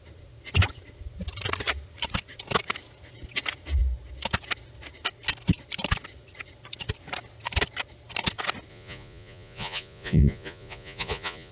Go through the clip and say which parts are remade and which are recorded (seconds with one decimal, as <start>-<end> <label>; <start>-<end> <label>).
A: 0.0-8.7 recorded; 8.7-11.5 remade